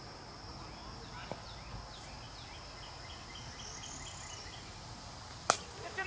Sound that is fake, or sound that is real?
real